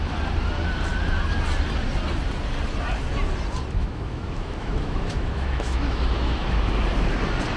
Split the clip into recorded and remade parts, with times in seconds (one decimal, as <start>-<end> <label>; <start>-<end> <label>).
0.0-3.8 recorded; 3.8-6.7 remade; 6.7-7.6 recorded